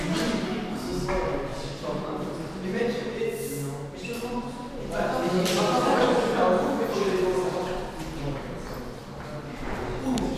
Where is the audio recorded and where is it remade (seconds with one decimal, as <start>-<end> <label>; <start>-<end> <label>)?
0.0-10.4 recorded